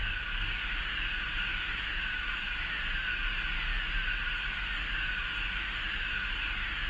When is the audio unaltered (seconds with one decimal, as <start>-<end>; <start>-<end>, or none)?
0.0-1.5; 2.7-6.9